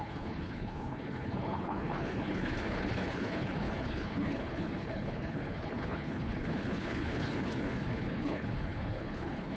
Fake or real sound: fake